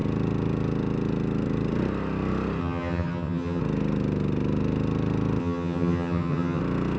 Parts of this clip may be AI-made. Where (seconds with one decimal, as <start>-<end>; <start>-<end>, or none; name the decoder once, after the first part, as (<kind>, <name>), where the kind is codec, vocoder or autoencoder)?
2.6-3.6 (vocoder, HiFi-GAN); 5.4-6.6